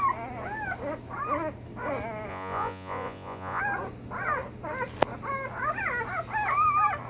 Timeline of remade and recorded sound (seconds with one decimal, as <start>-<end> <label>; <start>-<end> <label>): 0.0-2.3 recorded; 2.3-3.6 remade; 3.6-7.1 recorded

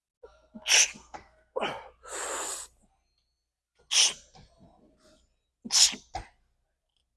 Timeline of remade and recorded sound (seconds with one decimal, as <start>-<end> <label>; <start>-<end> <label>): 0.0-1.0 recorded; 1.0-1.6 remade; 1.6-7.2 recorded

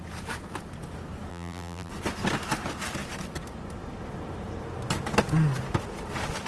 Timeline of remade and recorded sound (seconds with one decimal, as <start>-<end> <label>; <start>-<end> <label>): 0.0-1.3 recorded; 1.3-1.9 remade; 1.9-6.5 recorded

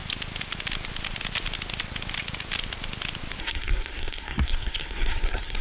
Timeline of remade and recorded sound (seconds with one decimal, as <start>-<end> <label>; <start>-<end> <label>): 0.0-3.4 recorded; 3.4-5.6 remade

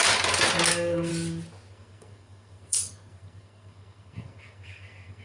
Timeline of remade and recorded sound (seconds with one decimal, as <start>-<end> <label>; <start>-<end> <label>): 0.0-0.7 recorded; 0.7-1.1 remade; 1.1-1.7 recorded; 1.7-5.2 remade

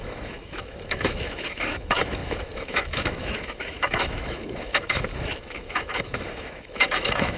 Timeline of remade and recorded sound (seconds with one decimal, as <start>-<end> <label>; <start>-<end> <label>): 0.0-7.4 remade

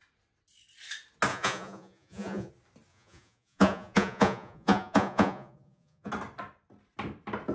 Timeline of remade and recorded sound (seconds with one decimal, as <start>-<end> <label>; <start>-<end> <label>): 0.0-1.3 recorded; 1.3-2.5 remade; 2.5-2.9 recorded; 2.9-6.1 remade; 6.1-7.5 recorded

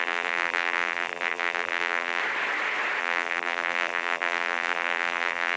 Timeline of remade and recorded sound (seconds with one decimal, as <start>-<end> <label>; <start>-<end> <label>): 0.0-2.2 remade; 2.2-3.0 recorded; 3.0-5.6 remade